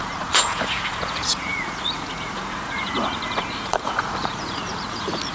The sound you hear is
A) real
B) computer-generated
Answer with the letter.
B